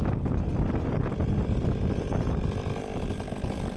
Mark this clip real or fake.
real